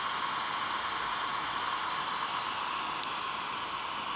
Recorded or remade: recorded